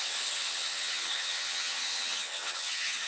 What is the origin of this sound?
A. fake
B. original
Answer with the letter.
A